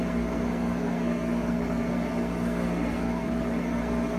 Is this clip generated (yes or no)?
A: yes